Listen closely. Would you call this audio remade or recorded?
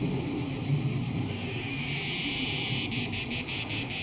recorded